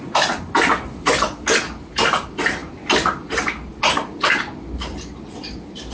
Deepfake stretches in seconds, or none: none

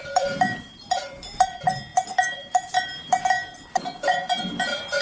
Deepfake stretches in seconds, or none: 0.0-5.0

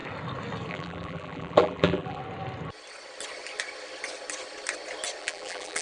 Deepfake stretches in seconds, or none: 0.7-2.2; 5.2-5.8

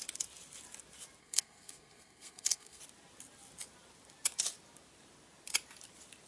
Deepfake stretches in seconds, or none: 1.2-2.8

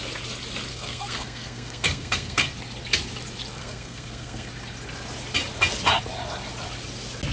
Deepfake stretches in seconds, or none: 0.7-2.5; 3.6-4.5

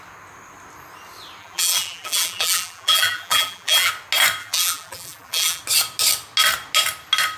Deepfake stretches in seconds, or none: 1.4-3.9; 4.4-5.6